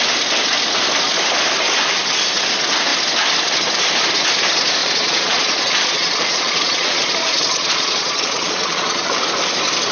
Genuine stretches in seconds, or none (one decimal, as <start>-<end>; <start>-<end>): 0.0-4.8; 9.1-9.9